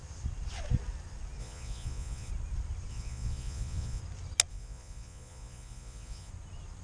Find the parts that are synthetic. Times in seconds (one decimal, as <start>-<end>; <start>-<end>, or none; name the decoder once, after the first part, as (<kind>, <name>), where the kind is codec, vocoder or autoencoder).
1.4-2.3 (vocoder, Vocos); 2.9-4.0; 4.5-6.3